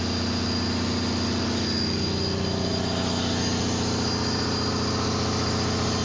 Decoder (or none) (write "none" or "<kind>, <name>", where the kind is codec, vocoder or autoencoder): none